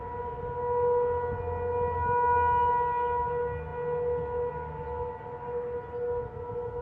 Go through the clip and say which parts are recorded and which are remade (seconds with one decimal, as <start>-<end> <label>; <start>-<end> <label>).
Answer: 0.0-6.8 recorded